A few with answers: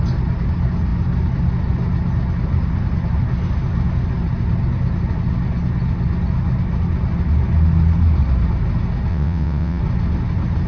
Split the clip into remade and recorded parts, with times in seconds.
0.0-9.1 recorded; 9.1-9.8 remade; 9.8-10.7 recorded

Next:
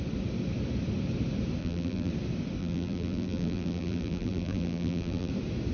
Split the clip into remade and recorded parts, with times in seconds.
0.0-1.6 recorded; 1.6-2.1 remade; 2.1-2.6 recorded; 2.6-5.3 remade; 5.3-5.7 recorded